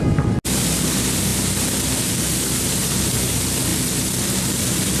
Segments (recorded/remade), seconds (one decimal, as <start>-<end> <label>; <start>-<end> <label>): 0.0-5.0 recorded